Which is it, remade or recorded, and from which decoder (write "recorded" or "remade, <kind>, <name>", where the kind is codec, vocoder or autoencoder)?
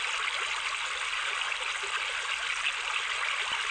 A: recorded